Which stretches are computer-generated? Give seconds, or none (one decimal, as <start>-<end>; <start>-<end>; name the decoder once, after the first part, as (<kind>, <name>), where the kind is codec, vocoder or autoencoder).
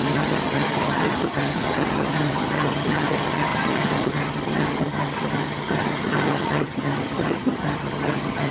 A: 0.0-8.5 (vocoder, HiFi-GAN)